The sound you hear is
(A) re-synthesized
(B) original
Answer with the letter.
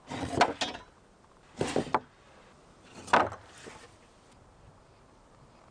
B